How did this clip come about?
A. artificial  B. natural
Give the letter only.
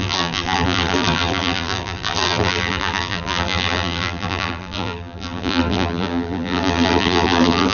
A